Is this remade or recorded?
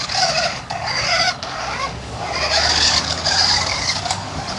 remade